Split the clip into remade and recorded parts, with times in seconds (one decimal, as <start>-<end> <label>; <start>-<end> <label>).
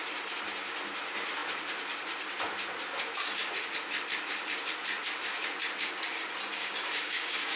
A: 0.0-6.6 recorded; 6.6-7.6 remade